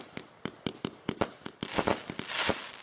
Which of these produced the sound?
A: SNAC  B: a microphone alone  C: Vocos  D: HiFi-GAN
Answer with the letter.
B